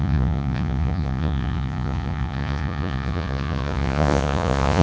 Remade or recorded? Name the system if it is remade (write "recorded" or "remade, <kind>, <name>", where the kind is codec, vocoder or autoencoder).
remade, vocoder, Vocos